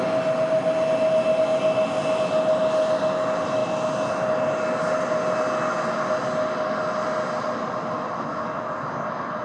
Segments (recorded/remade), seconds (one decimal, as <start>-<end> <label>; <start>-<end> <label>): 0.0-9.4 recorded